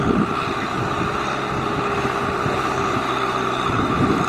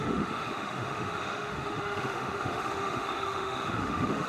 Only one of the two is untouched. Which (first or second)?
first